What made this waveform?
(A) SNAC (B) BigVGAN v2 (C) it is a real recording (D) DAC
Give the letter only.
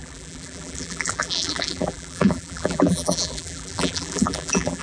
B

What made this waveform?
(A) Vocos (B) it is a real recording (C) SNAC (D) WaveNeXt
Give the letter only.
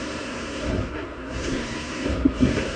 C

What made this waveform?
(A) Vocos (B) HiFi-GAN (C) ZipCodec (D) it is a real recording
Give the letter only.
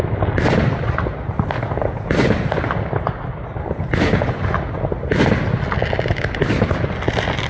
D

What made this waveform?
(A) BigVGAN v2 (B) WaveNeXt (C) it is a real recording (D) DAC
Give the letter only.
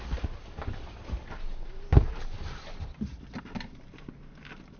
C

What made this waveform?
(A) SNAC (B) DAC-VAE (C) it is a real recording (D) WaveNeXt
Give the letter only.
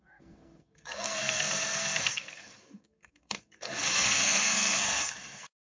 A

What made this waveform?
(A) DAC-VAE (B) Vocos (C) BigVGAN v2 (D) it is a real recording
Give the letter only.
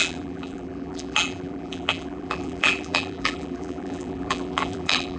C